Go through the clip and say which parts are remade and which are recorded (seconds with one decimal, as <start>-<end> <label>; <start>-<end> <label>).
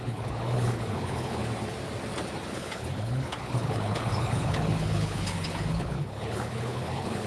0.0-1.4 remade; 1.4-2.5 recorded; 2.5-7.3 remade